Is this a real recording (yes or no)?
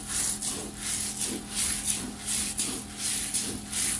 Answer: yes